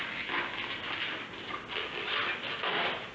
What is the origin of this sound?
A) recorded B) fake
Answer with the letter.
A